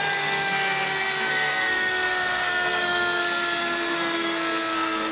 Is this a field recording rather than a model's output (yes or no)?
no